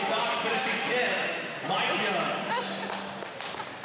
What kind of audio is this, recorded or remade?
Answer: recorded